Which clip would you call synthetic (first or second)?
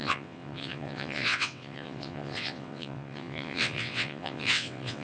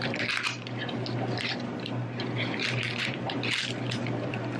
first